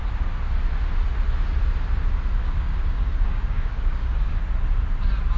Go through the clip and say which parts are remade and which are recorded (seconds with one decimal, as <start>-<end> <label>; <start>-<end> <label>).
0.0-2.4 recorded; 2.4-4.3 remade; 4.3-5.4 recorded

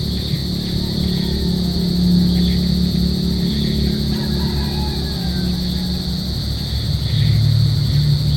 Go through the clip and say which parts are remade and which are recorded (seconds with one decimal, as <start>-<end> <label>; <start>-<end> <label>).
0.0-8.4 recorded